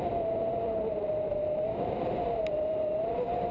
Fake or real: real